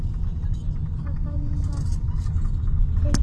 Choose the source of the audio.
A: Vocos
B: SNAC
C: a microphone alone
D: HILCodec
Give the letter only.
C